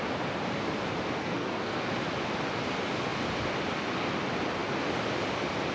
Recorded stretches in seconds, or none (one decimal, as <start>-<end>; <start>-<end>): 0.0-1.2; 1.8-5.7